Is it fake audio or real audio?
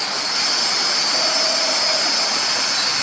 real